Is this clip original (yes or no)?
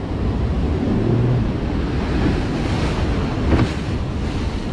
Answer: yes